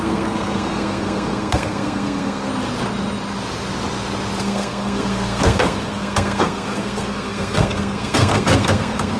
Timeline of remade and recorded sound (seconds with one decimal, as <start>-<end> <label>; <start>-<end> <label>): 0.0-2.5 remade; 2.5-4.4 recorded; 4.4-9.2 remade